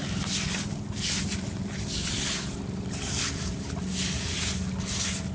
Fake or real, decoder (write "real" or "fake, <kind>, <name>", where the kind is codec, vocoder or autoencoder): real